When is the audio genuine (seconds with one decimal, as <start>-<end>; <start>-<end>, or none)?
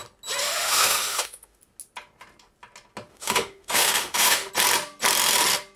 0.0-0.4; 1.6-3.1; 4.5-5.8